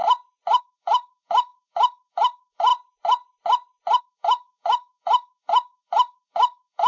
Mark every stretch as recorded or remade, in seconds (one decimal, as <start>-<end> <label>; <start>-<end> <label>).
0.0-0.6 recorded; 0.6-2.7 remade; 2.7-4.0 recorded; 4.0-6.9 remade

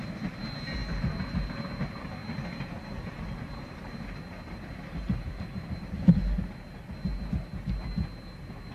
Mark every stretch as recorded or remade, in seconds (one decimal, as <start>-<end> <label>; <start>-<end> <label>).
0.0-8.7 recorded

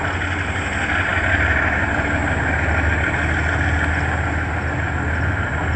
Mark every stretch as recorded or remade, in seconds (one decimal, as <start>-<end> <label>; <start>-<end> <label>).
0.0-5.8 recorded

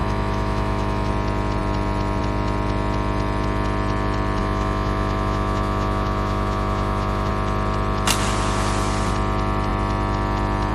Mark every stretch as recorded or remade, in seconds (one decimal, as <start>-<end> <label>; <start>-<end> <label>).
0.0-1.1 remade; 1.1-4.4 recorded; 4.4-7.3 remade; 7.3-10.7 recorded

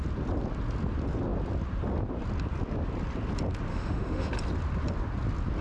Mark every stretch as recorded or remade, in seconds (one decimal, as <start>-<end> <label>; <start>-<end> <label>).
0.0-3.7 recorded; 3.7-4.3 remade; 4.3-5.6 recorded

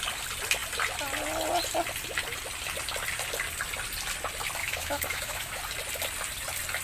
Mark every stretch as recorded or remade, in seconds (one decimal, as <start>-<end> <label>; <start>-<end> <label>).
0.0-4.6 recorded; 4.6-5.6 remade; 5.6-6.8 recorded

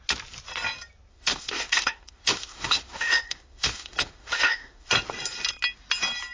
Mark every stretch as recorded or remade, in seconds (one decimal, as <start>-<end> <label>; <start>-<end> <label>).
0.0-1.1 recorded; 1.1-4.9 remade; 4.9-6.3 recorded

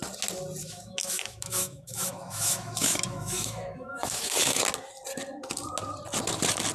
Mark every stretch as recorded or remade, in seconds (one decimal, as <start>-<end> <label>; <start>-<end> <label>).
0.0-0.6 recorded; 0.6-4.6 remade; 4.6-6.7 recorded